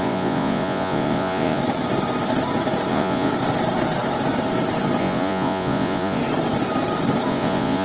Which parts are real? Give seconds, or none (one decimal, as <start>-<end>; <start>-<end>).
1.6-2.9; 3.3-5.0; 6.2-7.3